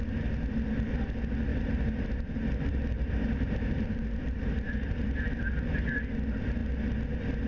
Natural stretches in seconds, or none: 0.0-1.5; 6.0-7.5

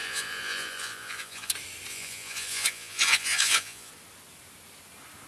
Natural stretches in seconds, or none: 1.5-1.9; 3.9-5.3

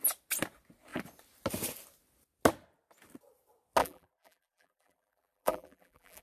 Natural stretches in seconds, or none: 0.0-3.8

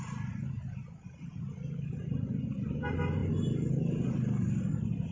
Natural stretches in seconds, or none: 0.0-5.1

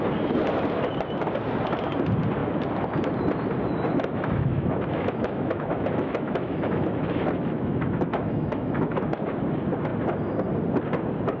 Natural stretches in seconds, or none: 0.0-3.9; 9.0-11.4

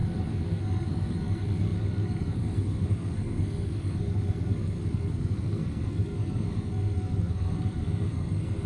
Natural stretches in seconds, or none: none